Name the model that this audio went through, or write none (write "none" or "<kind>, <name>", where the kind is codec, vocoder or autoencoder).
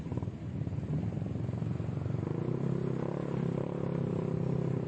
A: none